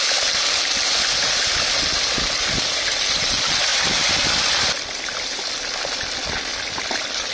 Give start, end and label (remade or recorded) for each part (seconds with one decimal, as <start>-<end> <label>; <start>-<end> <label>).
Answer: 0.0-3.7 recorded; 3.7-5.5 remade; 5.5-6.5 recorded; 6.5-7.3 remade